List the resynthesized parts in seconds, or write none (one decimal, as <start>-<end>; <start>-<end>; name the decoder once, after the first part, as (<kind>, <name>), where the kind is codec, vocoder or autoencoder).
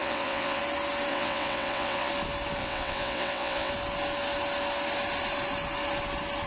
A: 0.0-0.6 (vocoder, WaveNeXt); 1.1-2.1; 2.6-3.7